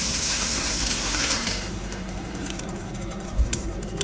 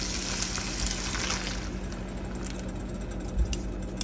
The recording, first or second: second